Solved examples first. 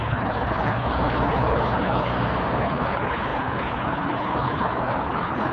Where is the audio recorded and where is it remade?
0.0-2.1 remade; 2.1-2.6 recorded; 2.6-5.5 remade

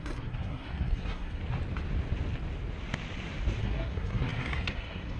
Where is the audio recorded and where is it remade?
0.0-1.4 remade; 1.4-3.6 recorded; 3.6-5.2 remade